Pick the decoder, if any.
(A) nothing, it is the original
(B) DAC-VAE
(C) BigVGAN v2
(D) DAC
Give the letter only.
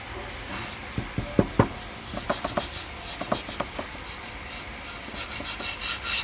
A